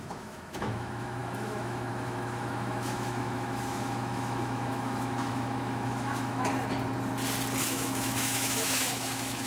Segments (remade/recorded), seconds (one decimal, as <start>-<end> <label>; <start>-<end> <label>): 0.0-6.5 remade; 6.5-7.6 recorded; 7.6-9.5 remade